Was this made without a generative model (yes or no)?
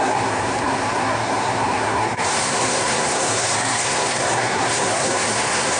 no